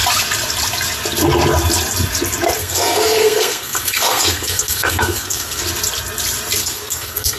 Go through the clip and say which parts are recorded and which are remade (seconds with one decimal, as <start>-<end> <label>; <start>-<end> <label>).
0.0-2.6 recorded; 2.6-5.6 remade; 5.6-6.6 recorded; 6.6-7.4 remade